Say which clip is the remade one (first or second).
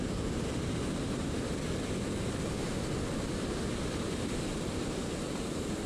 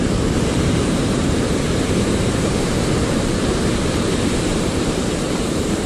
second